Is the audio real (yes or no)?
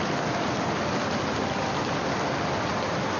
yes